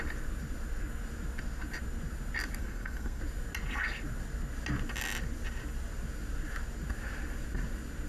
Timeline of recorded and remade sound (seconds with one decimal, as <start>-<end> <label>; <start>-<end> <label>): 0.0-2.6 recorded; 2.6-3.2 remade; 3.2-8.1 recorded